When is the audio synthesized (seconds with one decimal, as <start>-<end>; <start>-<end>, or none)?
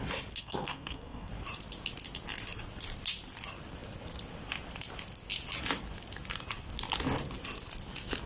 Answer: 0.4-1.3